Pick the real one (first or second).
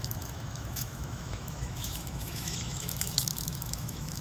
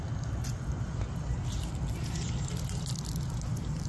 second